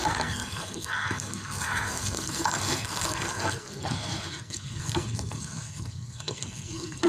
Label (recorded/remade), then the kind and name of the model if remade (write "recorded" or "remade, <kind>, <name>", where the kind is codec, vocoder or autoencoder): remade, codec, SNAC